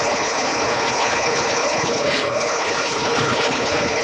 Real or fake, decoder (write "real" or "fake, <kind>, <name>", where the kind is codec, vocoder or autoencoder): fake, codec, HILCodec